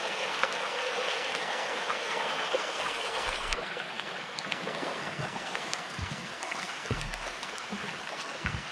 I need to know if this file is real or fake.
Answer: fake